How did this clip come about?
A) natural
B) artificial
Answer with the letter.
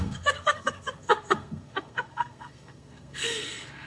B